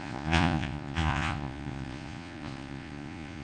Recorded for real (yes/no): no